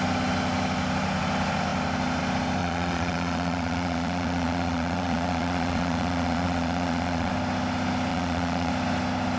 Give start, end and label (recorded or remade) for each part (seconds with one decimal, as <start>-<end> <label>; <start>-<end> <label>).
0.0-2.6 recorded; 2.6-7.3 remade; 7.3-8.1 recorded; 8.1-8.7 remade; 8.7-9.4 recorded